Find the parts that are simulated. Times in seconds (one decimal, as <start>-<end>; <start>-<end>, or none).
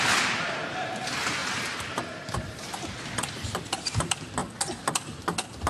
0.0-4.4